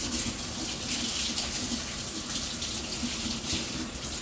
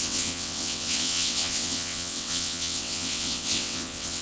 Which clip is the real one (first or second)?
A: first